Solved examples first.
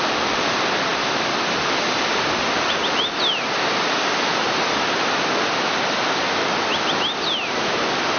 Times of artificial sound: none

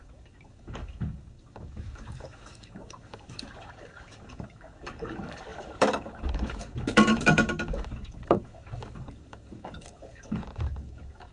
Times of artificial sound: 0.0-11.3 (codec, DAC)

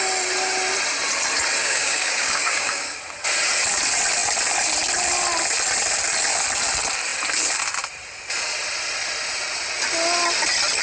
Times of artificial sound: 1.6-3.0 (codec, DAC)

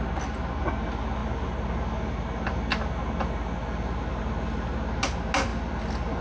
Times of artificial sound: none

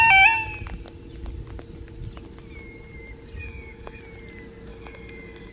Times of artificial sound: 3.4-4.0 (codec, DAC); 4.7-5.5

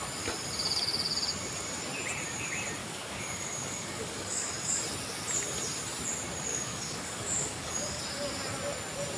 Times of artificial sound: 2.8-4.8 (codec, DAC); 6.5-8.0

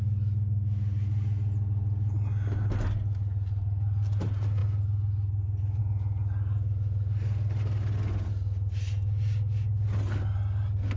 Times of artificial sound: none

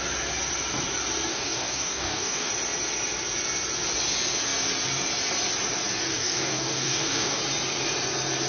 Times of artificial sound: 1.3-2.5 (codec, DAC); 6.1-7.4